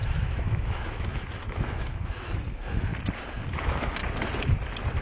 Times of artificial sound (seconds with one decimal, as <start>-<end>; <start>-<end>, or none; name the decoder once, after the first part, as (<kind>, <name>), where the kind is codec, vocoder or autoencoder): 0.0-2.9 (autoencoder, DAC-VAE); 3.5-4.0